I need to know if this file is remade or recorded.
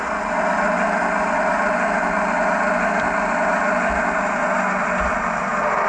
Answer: recorded